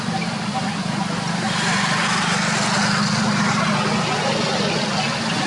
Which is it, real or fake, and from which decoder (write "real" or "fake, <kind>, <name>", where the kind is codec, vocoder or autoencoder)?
real